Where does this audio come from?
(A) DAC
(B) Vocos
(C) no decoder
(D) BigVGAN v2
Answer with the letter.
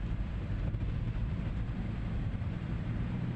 D